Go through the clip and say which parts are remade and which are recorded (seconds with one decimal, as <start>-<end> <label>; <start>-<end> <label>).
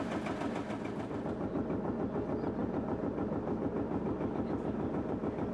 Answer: 0.0-5.5 recorded